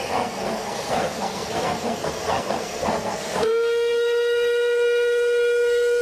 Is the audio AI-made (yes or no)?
yes